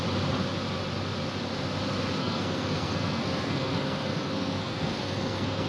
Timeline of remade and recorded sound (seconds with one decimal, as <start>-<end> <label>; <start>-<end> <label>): 0.0-2.2 recorded; 2.2-5.7 remade